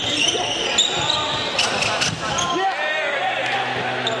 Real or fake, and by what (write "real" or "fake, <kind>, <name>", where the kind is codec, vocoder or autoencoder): real